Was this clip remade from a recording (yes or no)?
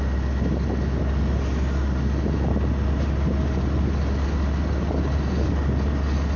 no